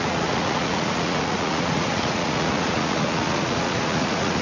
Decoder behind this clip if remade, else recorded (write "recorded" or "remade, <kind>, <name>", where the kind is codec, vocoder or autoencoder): remade, vocoder, Vocos